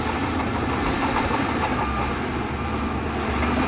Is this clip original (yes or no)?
yes